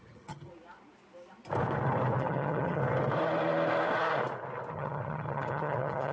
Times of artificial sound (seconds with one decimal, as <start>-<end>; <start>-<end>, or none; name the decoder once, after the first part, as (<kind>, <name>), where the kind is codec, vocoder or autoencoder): 0.0-0.5 (vocoder, HiFi-GAN); 2.2-2.8; 4.7-6.1